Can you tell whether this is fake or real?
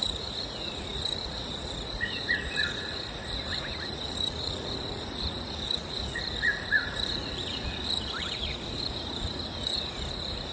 fake